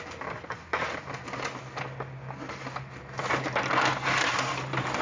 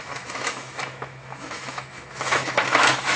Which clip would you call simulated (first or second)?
second